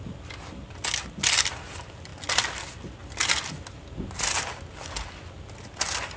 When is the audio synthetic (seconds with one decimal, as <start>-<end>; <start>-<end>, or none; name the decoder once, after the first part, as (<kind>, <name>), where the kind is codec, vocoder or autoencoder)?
none